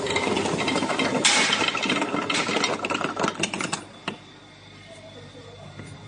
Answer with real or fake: real